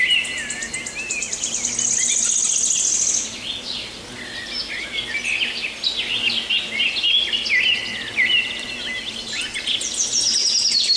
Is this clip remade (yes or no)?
no